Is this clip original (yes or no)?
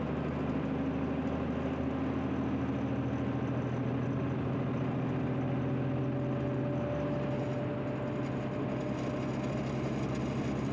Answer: yes